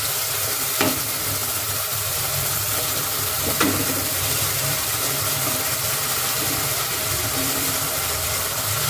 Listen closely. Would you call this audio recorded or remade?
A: remade